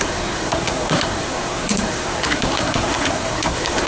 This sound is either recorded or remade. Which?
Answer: remade